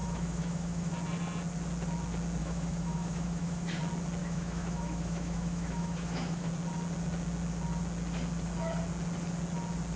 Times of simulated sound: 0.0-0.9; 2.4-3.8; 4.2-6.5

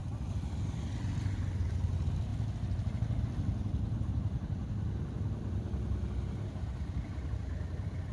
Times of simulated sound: none

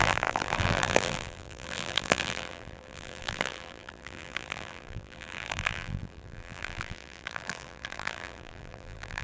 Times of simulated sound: 0.0-9.2

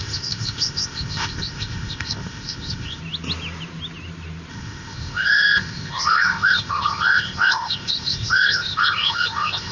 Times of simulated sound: 0.0-3.0; 4.5-9.7

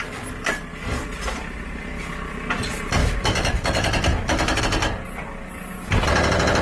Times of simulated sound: 3.0-4.6

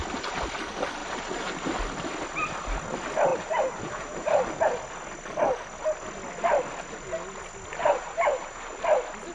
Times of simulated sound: 1.0-1.8; 3.3-4.6; 7.8-8.8